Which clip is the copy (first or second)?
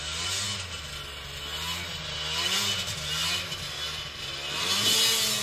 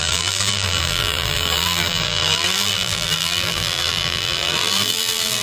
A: second